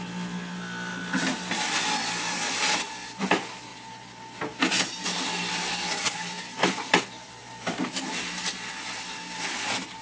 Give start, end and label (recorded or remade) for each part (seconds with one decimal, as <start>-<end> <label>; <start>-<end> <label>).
0.0-0.9 recorded; 0.9-1.7 remade; 1.7-3.7 recorded; 3.7-7.0 remade; 7.0-7.4 recorded; 7.4-8.1 remade; 8.1-10.0 recorded